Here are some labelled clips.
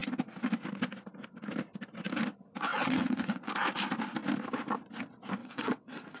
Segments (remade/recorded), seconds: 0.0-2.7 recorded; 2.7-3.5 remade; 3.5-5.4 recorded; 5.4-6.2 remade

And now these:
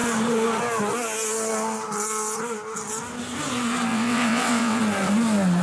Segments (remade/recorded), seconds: 0.0-3.9 recorded; 3.9-4.8 remade; 4.8-5.6 recorded

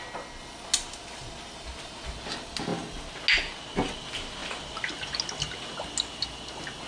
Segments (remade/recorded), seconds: 0.0-6.9 recorded